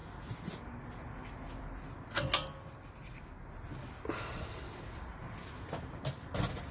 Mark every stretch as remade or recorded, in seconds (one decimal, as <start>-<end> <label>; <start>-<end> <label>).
0.0-5.1 recorded; 5.1-6.0 remade; 6.0-6.7 recorded